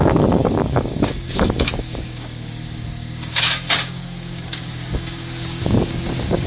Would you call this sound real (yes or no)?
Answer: no